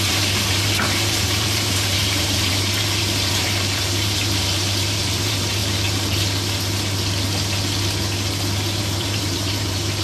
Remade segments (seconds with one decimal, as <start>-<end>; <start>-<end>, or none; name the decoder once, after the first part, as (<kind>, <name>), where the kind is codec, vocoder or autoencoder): 0.0-5.6 (vocoder, BigVGAN v2); 8.8-10.0